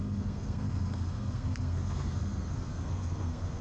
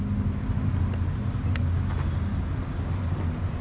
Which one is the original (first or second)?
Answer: second